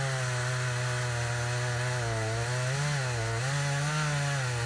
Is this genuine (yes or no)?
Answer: yes